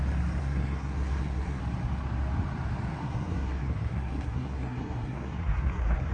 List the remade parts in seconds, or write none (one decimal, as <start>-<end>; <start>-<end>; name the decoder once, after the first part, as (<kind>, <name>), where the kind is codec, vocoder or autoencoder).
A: 0.4-1.6 (codec, SNAC); 3.0-6.1